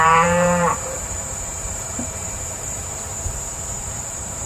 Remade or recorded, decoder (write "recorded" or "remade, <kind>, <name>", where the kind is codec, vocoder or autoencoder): remade, vocoder, BigVGAN v2